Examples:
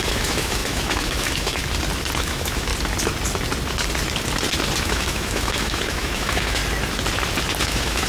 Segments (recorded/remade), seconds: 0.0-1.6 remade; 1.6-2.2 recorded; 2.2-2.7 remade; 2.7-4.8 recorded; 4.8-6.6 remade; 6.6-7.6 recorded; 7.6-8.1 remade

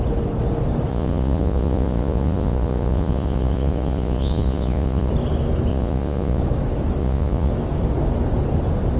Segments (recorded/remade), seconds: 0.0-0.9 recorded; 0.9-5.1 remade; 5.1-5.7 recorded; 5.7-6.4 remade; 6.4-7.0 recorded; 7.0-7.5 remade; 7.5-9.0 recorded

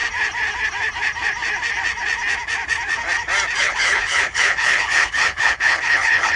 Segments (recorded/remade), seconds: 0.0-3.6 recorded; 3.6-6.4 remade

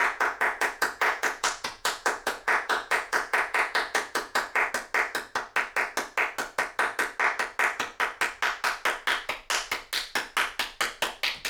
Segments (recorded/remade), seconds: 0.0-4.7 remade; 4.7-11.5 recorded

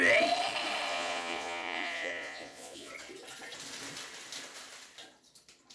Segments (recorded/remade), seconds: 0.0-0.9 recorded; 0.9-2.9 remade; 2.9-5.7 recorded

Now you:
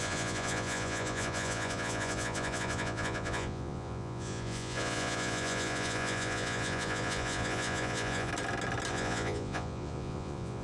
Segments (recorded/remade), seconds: 0.0-8.3 remade; 8.3-8.9 recorded; 8.9-10.6 remade

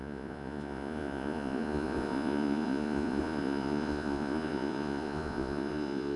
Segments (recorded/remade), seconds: 0.0-6.2 remade

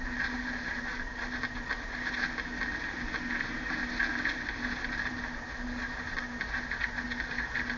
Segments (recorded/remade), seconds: 0.0-7.8 recorded